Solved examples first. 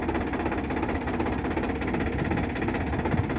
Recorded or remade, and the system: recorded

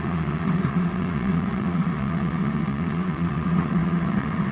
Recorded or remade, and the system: remade, vocoder, WaveNeXt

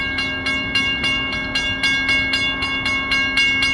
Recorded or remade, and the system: recorded